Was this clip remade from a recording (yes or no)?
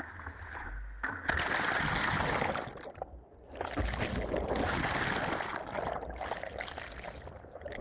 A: no